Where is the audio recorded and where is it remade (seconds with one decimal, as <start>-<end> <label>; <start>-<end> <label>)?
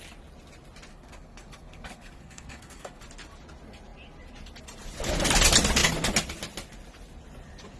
0.0-0.9 recorded; 0.9-3.0 remade; 3.0-7.8 recorded